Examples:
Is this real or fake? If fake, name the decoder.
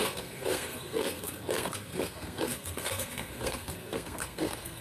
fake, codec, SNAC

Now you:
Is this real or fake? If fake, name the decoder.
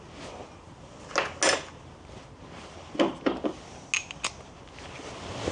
real